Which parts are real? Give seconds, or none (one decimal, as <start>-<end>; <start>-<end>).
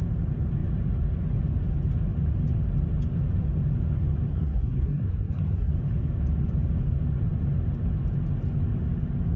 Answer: 0.0-4.3; 5.7-9.4